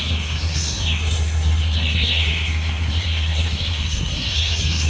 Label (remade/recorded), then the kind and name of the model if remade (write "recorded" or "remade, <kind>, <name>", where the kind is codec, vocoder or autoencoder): remade, codec, SNAC